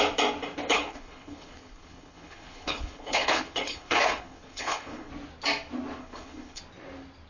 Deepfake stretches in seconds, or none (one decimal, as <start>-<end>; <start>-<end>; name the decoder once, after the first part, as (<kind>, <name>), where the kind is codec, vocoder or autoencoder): 0.7-5.1 (codec, HILCodec); 6.0-6.6